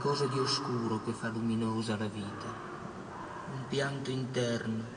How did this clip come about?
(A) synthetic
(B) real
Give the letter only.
B